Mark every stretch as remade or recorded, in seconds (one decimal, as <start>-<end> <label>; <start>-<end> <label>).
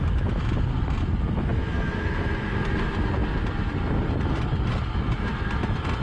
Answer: 0.0-6.0 recorded